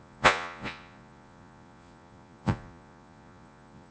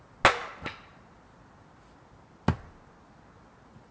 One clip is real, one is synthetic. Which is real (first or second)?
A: second